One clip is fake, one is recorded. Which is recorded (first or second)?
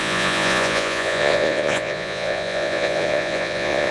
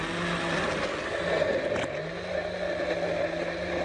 second